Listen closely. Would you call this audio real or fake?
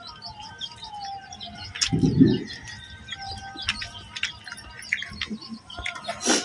real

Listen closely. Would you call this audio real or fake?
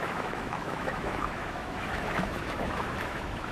fake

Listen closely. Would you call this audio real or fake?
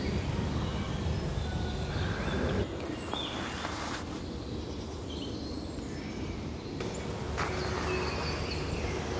real